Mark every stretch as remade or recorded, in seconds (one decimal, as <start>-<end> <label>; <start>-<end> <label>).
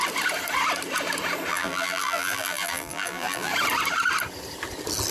0.0-1.5 recorded; 1.5-3.5 remade; 3.5-5.1 recorded